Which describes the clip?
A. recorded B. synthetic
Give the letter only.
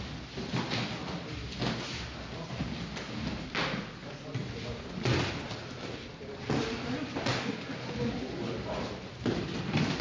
A